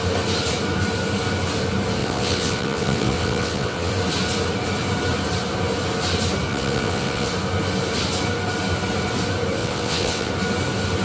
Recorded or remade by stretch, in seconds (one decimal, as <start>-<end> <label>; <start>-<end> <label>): 0.0-2.0 recorded; 2.0-3.9 remade; 3.9-6.5 recorded; 6.5-7.3 remade; 7.3-9.6 recorded; 9.6-10.3 remade; 10.3-11.0 recorded

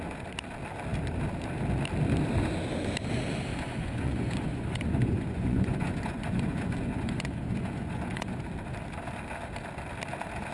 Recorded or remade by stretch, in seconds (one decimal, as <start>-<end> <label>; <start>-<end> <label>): 0.0-3.5 recorded; 3.5-8.4 remade; 8.4-10.5 recorded

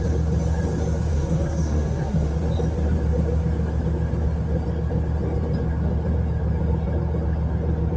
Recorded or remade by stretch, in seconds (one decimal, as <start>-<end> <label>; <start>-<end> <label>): 0.0-1.1 recorded; 1.1-2.3 remade; 2.3-8.0 recorded

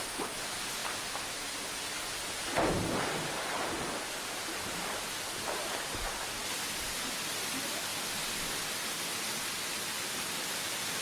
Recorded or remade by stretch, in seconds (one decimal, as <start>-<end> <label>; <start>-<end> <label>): 0.0-11.0 recorded

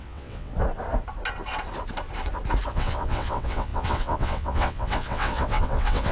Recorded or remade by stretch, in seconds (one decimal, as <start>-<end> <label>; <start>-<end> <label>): 0.0-0.5 remade; 0.5-2.7 recorded; 2.7-6.1 remade

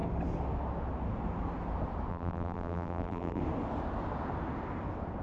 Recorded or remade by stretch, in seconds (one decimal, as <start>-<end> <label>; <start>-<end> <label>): 0.0-2.1 recorded; 2.1-3.4 remade; 3.4-5.2 recorded